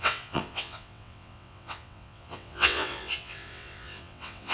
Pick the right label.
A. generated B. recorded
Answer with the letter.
A